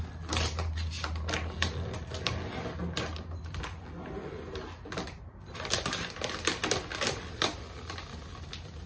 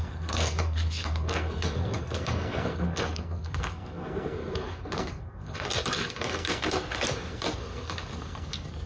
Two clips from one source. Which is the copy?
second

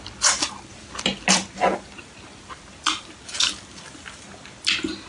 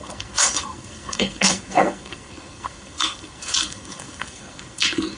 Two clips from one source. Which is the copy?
second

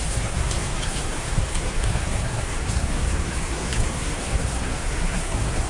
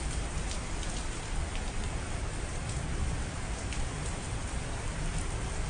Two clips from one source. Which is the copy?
first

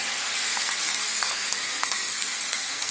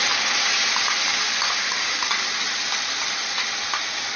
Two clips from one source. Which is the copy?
first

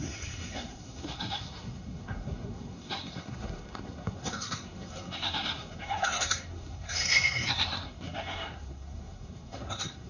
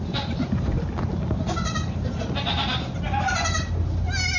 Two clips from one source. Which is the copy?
first